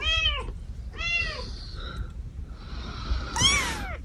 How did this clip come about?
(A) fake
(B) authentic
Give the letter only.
B